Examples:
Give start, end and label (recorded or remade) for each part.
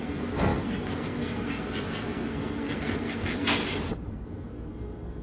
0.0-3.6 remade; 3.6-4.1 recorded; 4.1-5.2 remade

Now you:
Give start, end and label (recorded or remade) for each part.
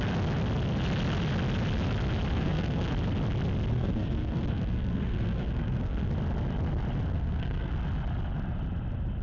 0.0-2.3 recorded; 2.3-2.9 remade; 2.9-3.7 recorded; 3.7-6.1 remade; 6.1-7.1 recorded; 7.1-7.7 remade; 7.7-9.2 recorded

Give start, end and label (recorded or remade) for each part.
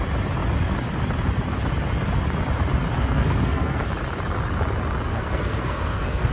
0.0-3.0 recorded; 3.0-3.8 remade; 3.8-5.1 recorded; 5.1-6.3 remade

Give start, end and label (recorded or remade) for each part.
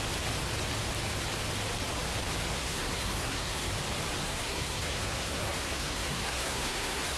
0.0-2.6 recorded; 2.6-3.7 remade; 3.7-4.2 recorded; 4.2-7.2 remade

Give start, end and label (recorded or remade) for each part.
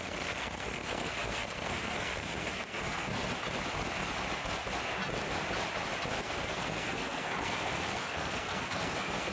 0.0-3.2 remade; 3.2-6.2 recorded; 6.2-9.3 remade